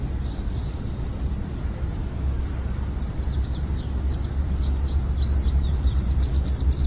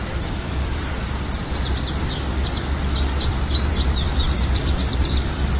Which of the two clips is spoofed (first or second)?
second